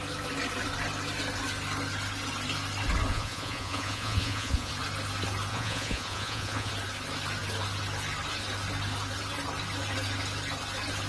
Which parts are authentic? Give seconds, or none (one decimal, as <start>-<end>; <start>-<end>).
0.0-3.1; 4.7-5.5; 6.7-11.1